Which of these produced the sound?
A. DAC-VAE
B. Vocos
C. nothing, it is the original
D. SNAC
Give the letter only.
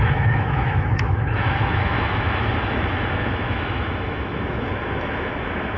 A